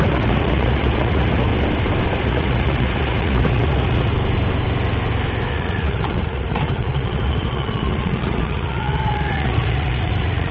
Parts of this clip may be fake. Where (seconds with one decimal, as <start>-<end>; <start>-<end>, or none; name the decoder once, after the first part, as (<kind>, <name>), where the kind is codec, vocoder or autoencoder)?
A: 0.0-1.5 (vocoder, Vocos); 2.2-4.1; 5.5-10.5